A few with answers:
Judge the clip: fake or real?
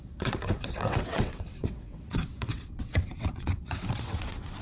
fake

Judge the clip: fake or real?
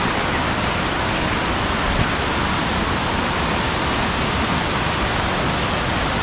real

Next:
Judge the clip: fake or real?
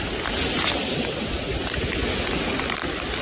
real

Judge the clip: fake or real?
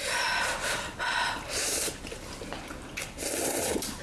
real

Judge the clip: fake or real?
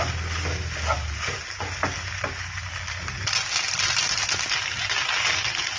real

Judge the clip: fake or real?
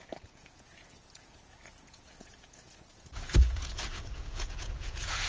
fake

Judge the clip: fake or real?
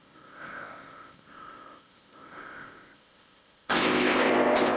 fake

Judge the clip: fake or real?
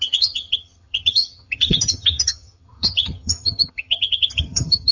fake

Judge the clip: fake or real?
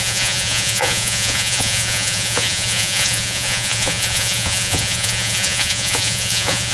fake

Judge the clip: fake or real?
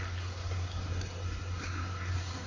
fake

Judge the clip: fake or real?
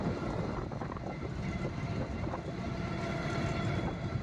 fake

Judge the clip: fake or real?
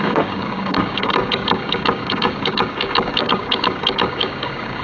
fake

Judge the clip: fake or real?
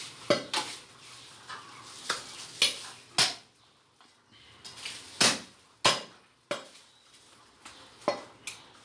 real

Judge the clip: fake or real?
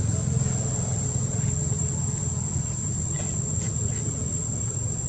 real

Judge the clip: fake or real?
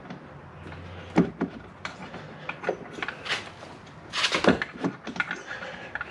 real